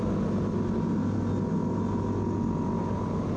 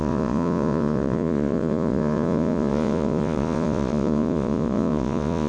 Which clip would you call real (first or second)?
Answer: first